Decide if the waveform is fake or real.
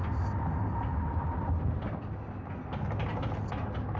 real